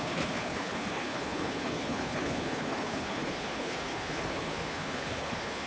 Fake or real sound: fake